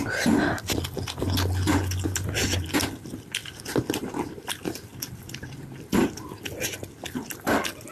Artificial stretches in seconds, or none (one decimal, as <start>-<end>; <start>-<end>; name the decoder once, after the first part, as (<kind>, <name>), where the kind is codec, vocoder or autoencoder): 3.4-4.5 (vocoder, BigVGAN v2); 4.9-5.6